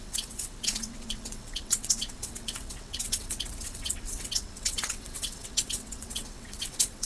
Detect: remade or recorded remade